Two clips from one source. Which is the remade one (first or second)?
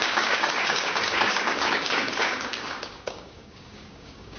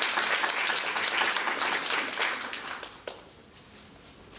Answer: first